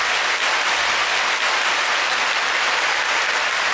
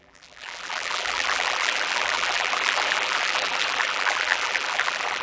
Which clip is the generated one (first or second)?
second